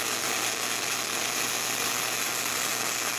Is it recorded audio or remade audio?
recorded